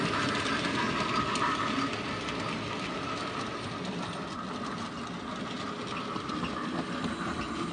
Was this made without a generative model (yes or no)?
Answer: yes